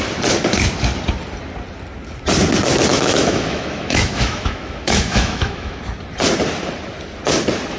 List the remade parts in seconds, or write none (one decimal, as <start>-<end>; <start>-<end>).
2.9-5.8